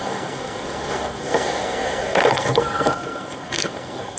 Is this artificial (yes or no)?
yes